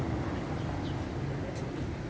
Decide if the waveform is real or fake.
real